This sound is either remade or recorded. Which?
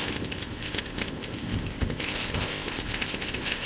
remade